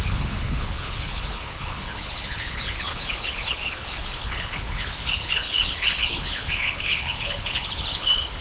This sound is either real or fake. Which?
fake